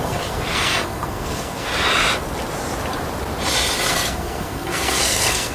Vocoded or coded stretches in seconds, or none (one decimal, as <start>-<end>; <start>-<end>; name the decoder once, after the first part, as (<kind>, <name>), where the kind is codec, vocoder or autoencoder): 0.0-1.7 (codec, SNAC); 3.9-5.5